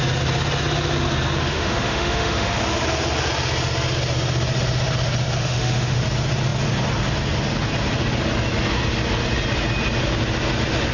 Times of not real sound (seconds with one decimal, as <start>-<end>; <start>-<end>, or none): 1.4-2.6; 5.4-6.0